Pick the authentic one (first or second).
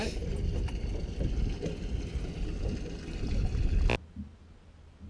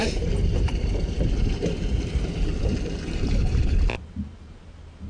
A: first